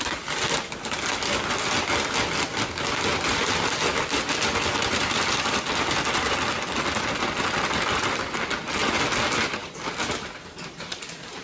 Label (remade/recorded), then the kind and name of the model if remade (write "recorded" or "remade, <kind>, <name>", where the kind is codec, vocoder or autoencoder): recorded